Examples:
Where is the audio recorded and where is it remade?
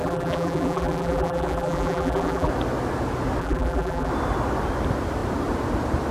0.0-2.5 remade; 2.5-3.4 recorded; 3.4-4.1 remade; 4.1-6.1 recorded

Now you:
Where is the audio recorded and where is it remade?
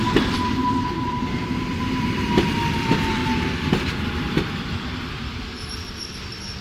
0.0-3.2 remade; 3.2-4.2 recorded; 4.2-6.6 remade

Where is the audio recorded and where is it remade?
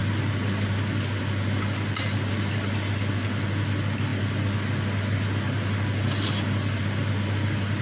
0.0-1.2 recorded; 1.2-4.1 remade; 4.1-6.8 recorded; 6.8-7.8 remade